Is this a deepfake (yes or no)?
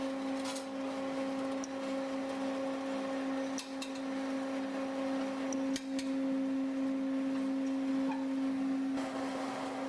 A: no